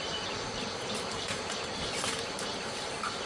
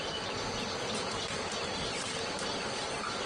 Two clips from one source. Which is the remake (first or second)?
first